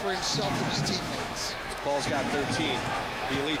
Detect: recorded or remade remade